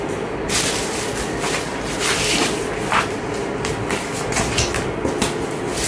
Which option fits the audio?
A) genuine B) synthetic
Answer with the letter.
A